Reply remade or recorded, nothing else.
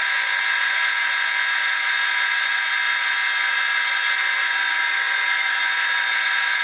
remade